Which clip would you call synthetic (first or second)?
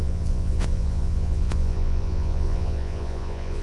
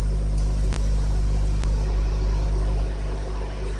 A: first